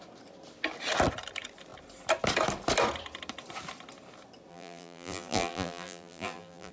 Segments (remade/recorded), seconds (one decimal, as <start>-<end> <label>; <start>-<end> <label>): 0.0-4.5 recorded; 4.5-6.7 remade